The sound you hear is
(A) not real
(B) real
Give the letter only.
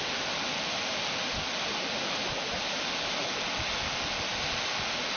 B